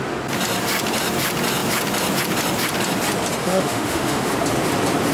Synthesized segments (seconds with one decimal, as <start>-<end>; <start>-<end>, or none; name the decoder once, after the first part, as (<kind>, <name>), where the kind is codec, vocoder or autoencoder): 3.4-4.3 (autoencoder, DAC-VAE)